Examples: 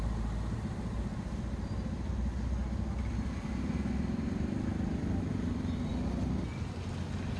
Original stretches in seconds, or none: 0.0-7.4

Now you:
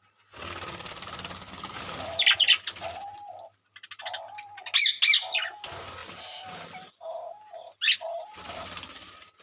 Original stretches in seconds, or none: 0.0-9.4

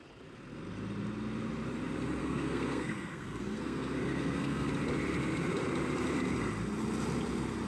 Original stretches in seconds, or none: 0.0-2.2; 4.7-7.7

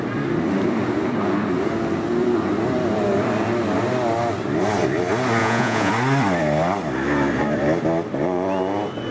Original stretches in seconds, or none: 0.0-5.4; 5.9-9.1

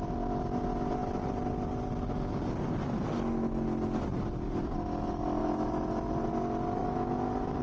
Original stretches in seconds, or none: 0.0-5.4; 6.1-6.8